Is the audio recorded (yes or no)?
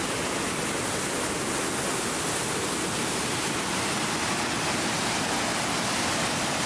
yes